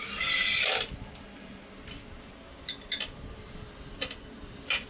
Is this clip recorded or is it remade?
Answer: recorded